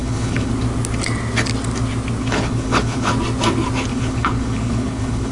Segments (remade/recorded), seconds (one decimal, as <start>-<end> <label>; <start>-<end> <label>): 0.0-0.5 remade; 0.5-2.2 recorded; 2.2-3.1 remade; 3.1-3.9 recorded; 3.9-5.3 remade